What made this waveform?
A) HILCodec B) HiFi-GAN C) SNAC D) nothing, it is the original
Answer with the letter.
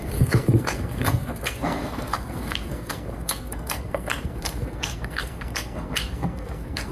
C